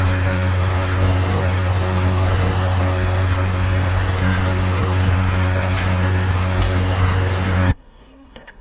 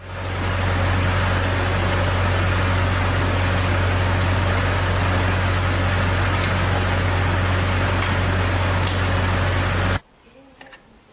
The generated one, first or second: first